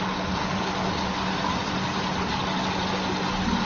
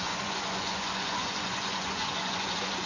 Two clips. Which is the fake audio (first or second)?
second